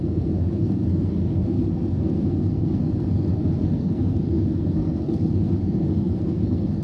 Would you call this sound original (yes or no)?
no